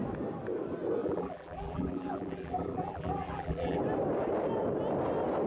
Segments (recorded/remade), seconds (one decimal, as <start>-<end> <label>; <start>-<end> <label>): 0.0-1.0 recorded; 1.0-3.8 remade; 3.8-5.5 recorded